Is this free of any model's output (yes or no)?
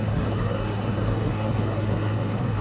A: no